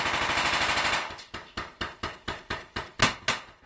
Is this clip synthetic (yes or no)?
no